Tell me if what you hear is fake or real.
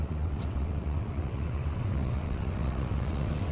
fake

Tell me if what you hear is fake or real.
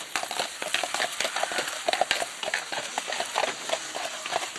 real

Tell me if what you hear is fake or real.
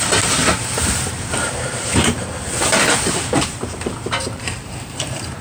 fake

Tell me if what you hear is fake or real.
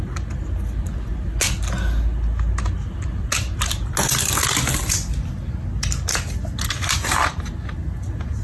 real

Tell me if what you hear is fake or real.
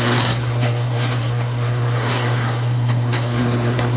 fake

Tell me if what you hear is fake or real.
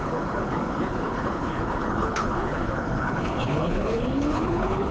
fake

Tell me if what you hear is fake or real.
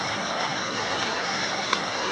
fake